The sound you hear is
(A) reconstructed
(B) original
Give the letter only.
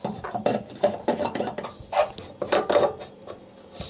B